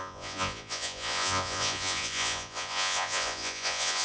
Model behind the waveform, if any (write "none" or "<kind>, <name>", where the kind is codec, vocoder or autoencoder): vocoder, Vocos